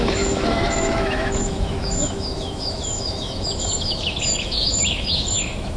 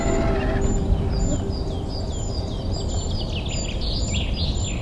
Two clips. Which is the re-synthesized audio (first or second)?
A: first